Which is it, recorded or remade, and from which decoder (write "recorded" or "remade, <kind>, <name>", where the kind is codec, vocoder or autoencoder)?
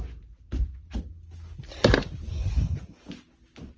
recorded